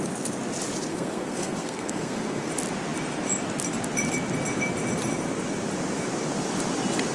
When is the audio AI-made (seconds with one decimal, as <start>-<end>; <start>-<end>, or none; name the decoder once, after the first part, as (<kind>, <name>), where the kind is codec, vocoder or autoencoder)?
0.9-2.5 (codec, SNAC)